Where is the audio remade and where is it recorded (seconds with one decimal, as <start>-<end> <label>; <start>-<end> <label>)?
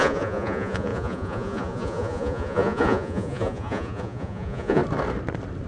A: 0.0-4.8 remade; 4.8-5.7 recorded